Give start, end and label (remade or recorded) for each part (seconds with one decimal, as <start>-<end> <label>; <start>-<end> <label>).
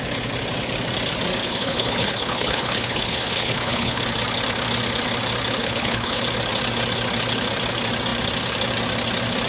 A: 0.0-1.4 recorded; 1.4-4.0 remade; 4.0-5.6 recorded; 5.6-6.2 remade; 6.2-9.5 recorded